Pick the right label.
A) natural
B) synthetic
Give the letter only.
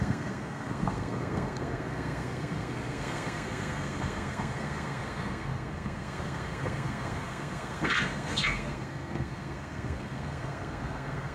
B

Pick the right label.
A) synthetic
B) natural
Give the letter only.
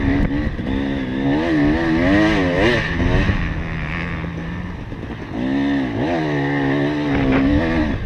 B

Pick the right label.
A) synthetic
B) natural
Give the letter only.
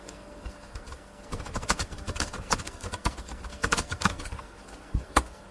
A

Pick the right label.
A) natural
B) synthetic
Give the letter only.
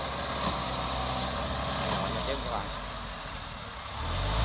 A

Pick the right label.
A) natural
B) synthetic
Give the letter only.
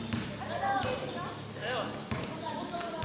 A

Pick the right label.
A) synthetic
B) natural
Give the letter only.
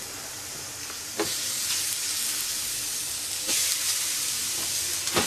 B